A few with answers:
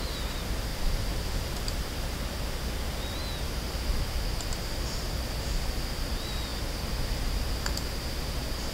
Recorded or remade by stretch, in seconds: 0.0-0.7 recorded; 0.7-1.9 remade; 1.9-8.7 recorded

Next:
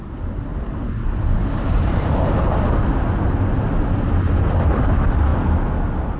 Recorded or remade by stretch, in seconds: 0.0-0.5 recorded; 0.5-2.6 remade; 2.6-5.3 recorded; 5.3-6.2 remade

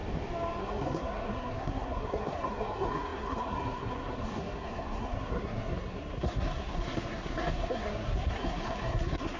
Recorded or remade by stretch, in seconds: 0.0-0.6 recorded; 0.6-9.4 remade

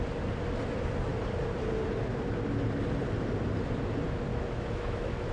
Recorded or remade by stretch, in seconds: 0.0-4.3 recorded; 4.3-5.3 remade

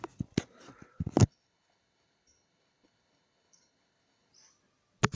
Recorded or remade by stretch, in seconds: 0.0-1.2 recorded; 1.2-4.3 remade; 4.3-5.1 recorded

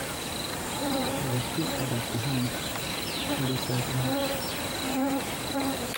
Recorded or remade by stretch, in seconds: 0.0-6.0 remade

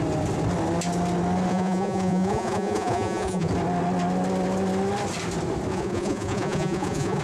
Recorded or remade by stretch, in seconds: 0.0-1.5 recorded; 1.5-3.5 remade; 3.5-5.7 recorded; 5.7-7.2 remade